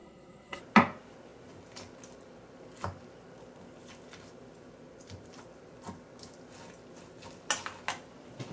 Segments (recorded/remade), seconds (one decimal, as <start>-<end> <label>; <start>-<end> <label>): 0.0-0.6 remade; 0.6-8.5 recorded